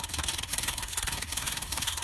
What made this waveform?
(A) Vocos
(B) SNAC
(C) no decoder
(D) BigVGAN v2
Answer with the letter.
B